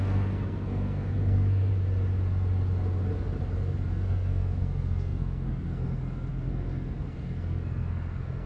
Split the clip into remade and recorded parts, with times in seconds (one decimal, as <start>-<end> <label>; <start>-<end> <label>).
0.0-1.7 remade; 1.7-3.9 recorded; 3.9-8.5 remade